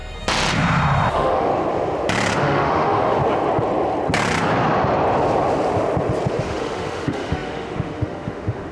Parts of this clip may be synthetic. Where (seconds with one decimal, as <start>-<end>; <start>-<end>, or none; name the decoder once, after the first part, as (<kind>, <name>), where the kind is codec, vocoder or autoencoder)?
1.1-1.5 (autoencoder, DAC-VAE); 2.4-3.2; 6.4-8.7